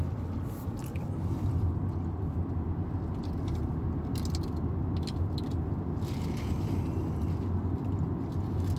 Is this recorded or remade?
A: recorded